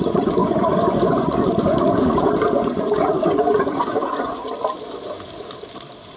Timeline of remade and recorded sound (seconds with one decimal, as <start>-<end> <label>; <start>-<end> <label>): 0.0-4.4 remade; 4.4-6.2 recorded